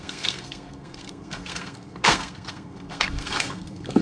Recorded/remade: remade